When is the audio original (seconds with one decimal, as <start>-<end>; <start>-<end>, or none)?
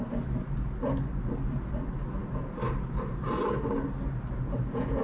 0.0-2.2; 3.3-5.0